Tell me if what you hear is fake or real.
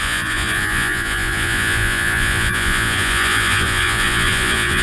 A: fake